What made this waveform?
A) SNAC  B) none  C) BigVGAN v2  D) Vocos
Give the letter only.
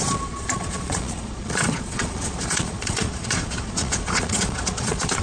D